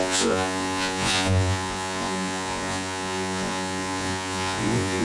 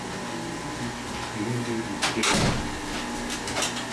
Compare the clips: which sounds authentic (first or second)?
second